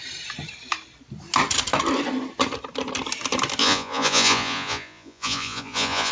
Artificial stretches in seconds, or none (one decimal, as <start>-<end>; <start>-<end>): 3.6-6.1